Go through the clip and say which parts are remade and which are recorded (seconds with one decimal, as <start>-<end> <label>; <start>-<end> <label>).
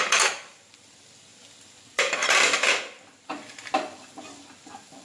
0.0-5.0 recorded